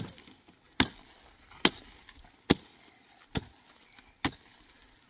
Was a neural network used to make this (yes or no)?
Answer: no